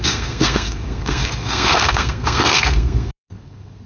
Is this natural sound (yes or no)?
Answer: no